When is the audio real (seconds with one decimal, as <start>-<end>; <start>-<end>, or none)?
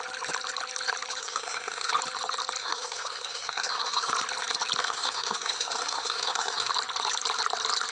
0.0-1.2; 1.9-2.6; 4.1-4.8; 6.7-7.9